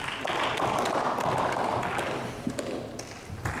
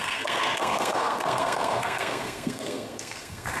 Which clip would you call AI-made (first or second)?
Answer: second